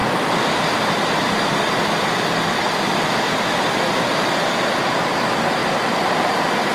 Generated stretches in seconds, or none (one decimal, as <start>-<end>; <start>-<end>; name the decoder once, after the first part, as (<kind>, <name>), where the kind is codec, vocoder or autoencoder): 5.6-6.7 (vocoder, BigVGAN v2)